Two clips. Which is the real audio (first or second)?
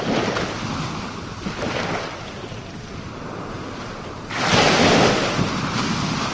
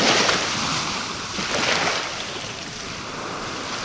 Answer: first